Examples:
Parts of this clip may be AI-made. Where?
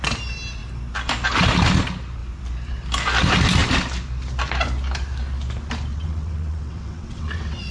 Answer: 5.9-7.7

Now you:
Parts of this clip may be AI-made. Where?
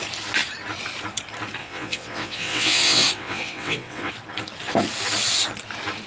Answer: 1.6-4.1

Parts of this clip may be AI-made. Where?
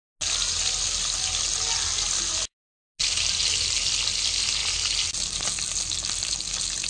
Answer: none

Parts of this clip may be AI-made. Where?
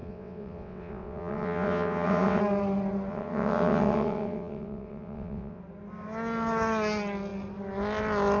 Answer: 0.0-2.4; 3.1-5.6